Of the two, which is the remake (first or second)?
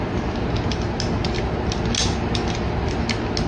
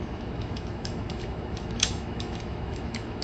second